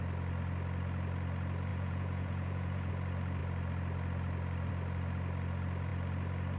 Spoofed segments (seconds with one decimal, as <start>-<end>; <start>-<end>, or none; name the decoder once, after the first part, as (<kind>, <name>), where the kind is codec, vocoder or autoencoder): 1.7-2.9 (vocoder, Vocos)